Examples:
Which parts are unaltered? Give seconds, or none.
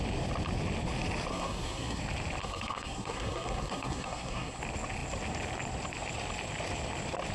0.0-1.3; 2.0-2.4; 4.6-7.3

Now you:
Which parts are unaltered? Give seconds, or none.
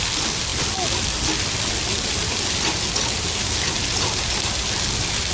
0.0-5.3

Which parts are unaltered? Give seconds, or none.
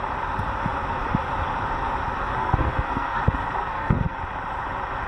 0.0-2.4; 3.2-3.6; 4.2-5.1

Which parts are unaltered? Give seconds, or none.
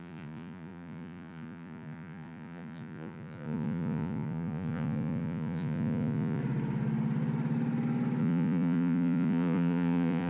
6.4-8.2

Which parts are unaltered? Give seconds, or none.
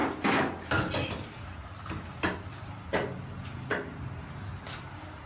0.0-5.3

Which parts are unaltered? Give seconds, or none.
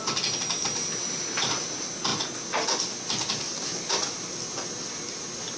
0.0-5.6